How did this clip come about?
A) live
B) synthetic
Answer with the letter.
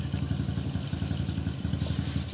A